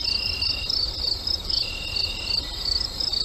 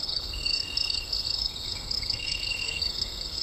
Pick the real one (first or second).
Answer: first